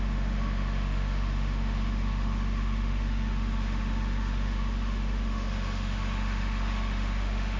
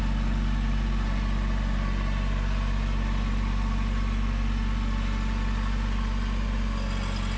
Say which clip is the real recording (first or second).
second